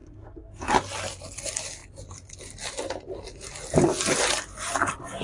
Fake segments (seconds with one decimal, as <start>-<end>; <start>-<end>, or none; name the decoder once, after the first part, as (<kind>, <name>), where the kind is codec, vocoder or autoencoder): 0.0-0.7 (codec, SNAC)